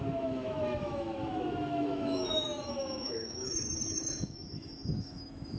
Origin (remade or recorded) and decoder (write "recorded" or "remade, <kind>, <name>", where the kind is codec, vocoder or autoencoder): remade, autoencoder, DAC-VAE